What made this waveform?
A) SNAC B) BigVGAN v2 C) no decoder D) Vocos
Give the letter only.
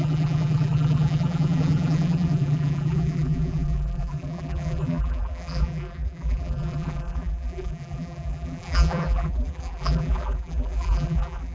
B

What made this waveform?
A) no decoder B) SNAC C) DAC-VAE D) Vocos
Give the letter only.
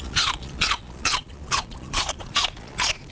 D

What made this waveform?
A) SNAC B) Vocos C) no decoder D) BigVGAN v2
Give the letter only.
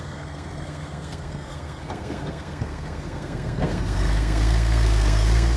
A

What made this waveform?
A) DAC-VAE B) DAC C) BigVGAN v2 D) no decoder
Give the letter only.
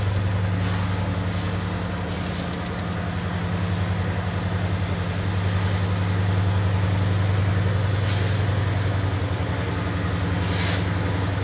D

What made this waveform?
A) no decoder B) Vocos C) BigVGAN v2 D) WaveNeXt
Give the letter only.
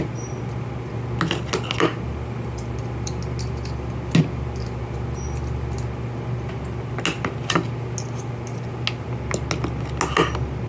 A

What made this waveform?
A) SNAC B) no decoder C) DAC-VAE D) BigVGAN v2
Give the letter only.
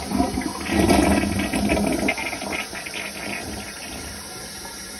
B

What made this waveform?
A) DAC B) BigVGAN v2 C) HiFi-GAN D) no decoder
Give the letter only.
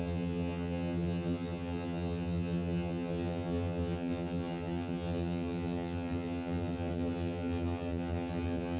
C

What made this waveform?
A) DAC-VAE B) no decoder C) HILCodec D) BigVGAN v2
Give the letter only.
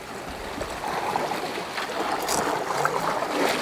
B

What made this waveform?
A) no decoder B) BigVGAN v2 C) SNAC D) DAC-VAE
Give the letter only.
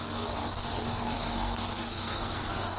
C